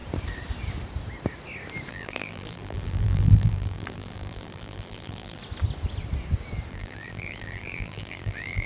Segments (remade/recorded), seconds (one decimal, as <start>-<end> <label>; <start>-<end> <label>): 0.0-1.9 recorded; 1.9-5.4 remade; 5.4-6.7 recorded; 6.7-8.7 remade